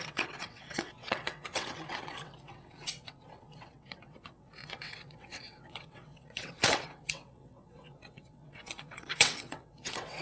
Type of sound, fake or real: fake